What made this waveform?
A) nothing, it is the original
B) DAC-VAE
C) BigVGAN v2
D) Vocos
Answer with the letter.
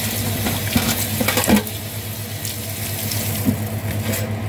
A